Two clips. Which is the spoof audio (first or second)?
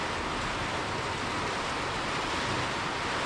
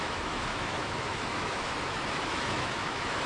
second